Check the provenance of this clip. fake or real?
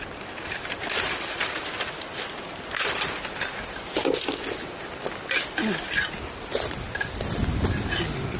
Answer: real